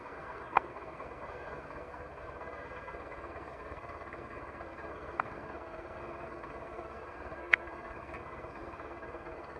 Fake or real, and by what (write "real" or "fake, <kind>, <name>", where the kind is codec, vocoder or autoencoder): fake, codec, SNAC